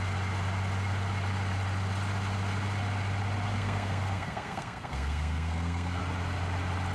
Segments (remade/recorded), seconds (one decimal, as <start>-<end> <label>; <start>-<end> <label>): 0.0-3.5 recorded; 3.5-6.0 remade; 6.0-6.9 recorded